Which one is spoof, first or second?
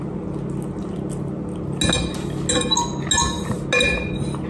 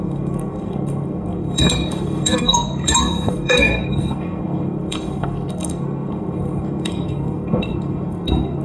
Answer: second